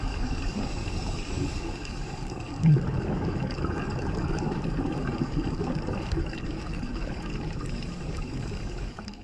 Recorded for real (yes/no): no